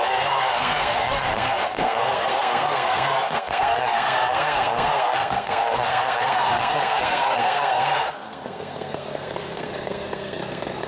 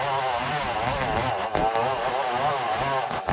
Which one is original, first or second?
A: second